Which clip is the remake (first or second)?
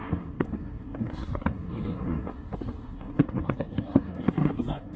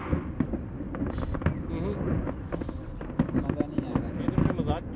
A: first